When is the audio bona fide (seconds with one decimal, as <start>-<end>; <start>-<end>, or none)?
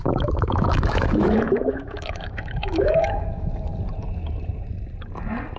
3.7-5.6